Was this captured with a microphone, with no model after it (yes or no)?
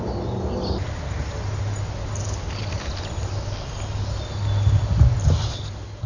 yes